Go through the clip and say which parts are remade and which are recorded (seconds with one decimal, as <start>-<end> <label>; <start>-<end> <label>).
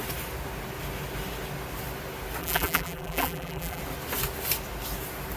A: 0.0-2.4 recorded; 2.4-3.8 remade; 3.8-5.4 recorded